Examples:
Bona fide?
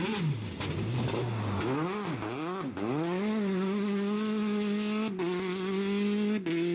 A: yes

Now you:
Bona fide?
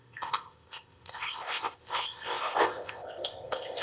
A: no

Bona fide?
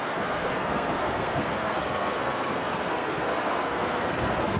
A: no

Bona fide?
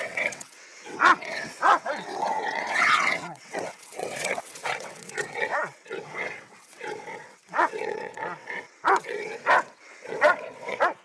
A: no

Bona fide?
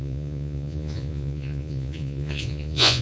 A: no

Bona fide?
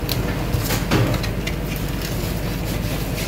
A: yes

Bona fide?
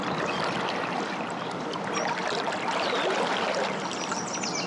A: yes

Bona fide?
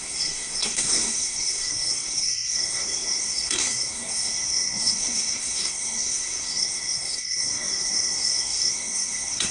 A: no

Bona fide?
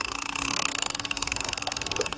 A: no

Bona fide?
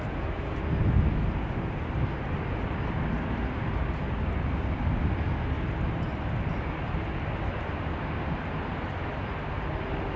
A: yes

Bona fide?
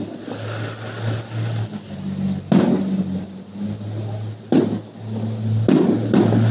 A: yes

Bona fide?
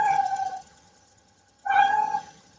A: no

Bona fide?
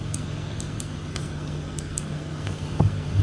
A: no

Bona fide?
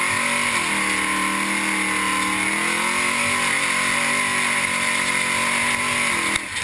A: yes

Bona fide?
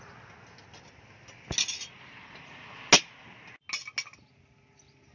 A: yes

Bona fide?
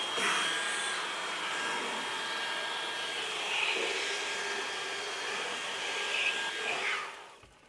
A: yes